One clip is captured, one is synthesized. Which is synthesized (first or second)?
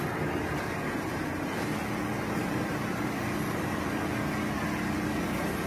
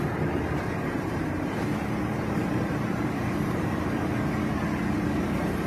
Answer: second